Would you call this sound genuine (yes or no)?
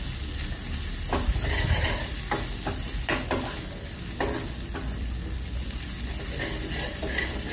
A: yes